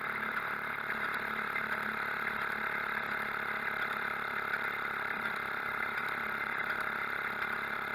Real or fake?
fake